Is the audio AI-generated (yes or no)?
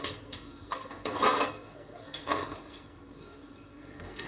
yes